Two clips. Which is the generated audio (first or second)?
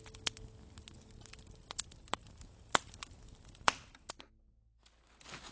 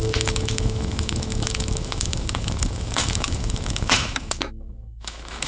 second